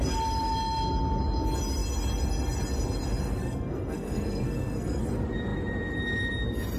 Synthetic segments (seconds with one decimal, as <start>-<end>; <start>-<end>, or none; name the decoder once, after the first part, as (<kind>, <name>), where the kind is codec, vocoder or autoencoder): 3.3-5.0 (codec, SNAC)